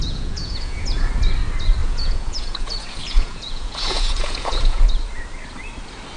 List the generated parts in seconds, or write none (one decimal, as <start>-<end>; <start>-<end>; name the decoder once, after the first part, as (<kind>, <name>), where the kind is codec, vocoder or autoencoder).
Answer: 0.0-1.1 (vocoder, Vocos); 1.8-4.9